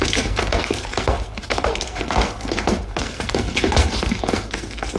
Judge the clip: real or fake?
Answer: fake